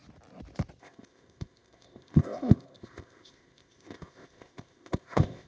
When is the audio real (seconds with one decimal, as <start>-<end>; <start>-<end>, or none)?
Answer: 0.0-0.8